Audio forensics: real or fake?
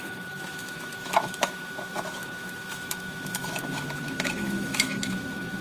fake